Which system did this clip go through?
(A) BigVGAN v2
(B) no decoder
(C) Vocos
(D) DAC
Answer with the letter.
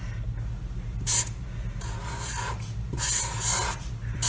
B